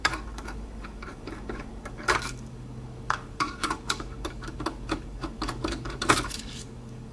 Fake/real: fake